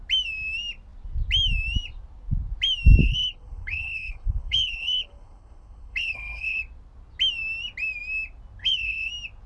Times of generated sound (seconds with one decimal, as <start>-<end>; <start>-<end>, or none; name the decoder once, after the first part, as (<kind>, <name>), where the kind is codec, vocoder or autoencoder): 3.0-6.6 (codec, HILCodec); 8.6-9.1